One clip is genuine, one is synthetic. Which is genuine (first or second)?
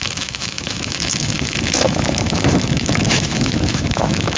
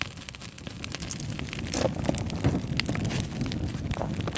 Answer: second